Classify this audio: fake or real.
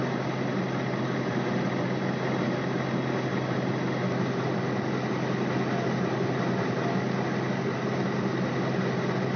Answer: real